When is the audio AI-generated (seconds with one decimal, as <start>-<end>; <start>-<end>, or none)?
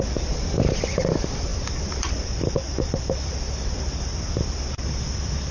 0.0-5.5